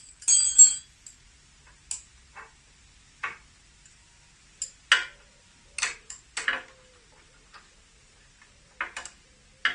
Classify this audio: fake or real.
real